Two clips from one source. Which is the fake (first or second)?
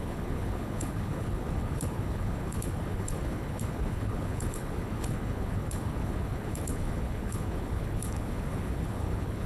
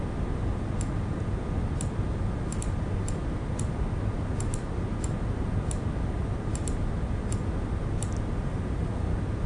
first